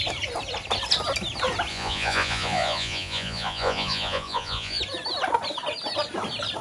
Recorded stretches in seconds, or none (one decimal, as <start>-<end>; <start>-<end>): 0.0-1.7; 4.8-6.6